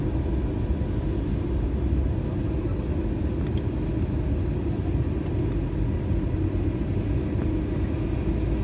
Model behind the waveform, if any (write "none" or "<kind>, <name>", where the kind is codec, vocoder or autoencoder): none